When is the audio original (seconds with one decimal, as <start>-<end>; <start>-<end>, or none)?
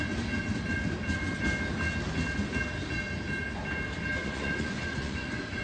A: 0.0-4.2